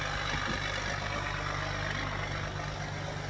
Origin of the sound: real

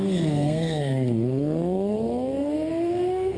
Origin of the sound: fake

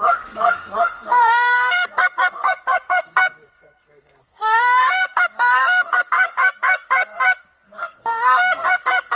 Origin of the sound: fake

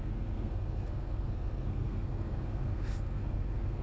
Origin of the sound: fake